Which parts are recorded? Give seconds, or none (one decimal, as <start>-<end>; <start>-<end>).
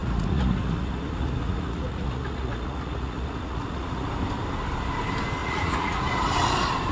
4.1-5.4; 6.0-6.9